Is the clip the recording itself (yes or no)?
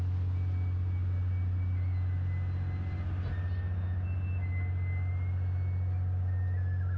yes